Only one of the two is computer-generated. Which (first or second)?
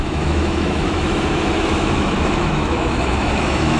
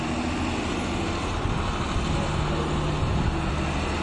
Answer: first